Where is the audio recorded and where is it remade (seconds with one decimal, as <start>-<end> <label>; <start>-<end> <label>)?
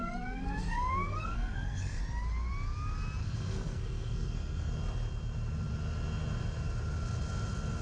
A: 0.0-2.0 remade; 2.0-3.2 recorded; 3.2-4.7 remade; 4.7-7.8 recorded